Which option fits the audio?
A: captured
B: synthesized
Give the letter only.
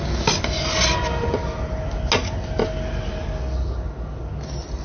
A